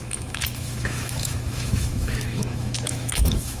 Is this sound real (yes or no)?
no